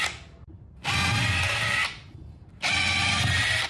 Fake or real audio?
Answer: real